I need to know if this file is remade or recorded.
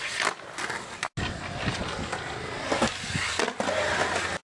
recorded